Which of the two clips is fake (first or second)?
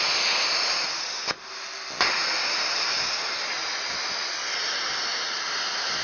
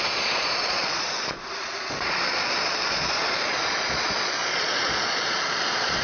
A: second